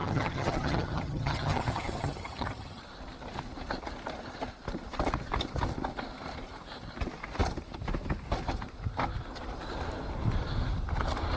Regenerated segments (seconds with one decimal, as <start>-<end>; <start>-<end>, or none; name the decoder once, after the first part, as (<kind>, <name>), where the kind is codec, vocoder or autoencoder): 0.0-2.8 (vocoder, HiFi-GAN)